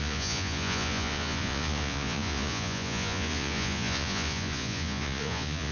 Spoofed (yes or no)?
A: yes